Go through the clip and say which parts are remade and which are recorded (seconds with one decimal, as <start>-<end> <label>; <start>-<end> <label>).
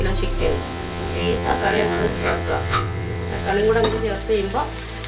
0.0-0.4 recorded; 0.4-3.5 remade; 3.5-5.1 recorded